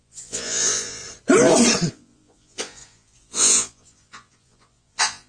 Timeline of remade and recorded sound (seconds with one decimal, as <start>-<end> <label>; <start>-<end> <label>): 0.0-1.0 remade; 1.0-1.9 recorded; 1.9-5.3 remade